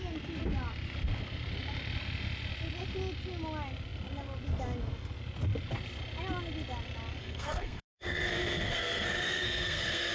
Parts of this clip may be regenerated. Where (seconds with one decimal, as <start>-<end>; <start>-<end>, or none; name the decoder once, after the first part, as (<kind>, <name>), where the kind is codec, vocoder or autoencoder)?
7.2-10.1 (codec, SNAC)